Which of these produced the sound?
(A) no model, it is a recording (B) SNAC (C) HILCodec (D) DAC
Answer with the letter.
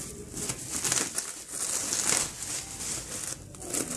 A